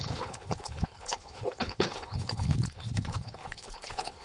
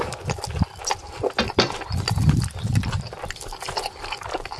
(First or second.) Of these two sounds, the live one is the second